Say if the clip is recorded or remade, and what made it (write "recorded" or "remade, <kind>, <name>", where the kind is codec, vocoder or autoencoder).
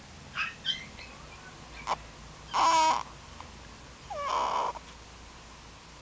recorded